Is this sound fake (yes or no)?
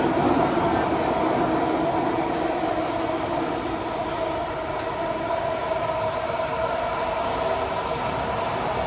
no